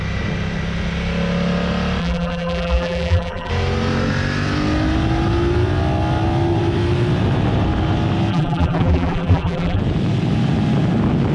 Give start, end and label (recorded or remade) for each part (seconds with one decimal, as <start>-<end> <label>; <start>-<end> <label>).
0.0-2.0 recorded; 2.0-3.5 remade; 3.5-8.3 recorded; 8.3-9.8 remade; 9.8-11.3 recorded